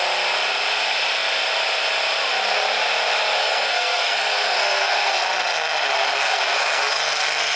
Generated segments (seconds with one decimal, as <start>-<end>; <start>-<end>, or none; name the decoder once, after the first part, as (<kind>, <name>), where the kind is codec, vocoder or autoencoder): 3.4-5.1 (codec, SNAC); 6.1-6.9